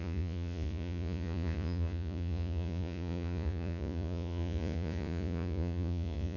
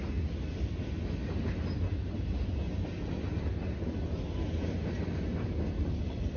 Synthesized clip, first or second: first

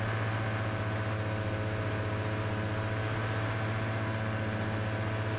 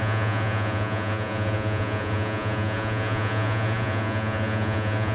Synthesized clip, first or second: second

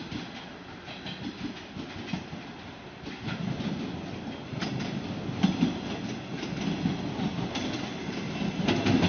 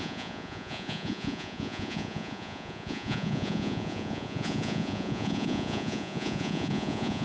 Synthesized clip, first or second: second